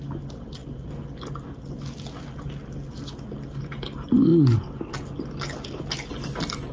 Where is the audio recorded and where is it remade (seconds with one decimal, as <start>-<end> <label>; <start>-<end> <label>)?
0.0-6.7 recorded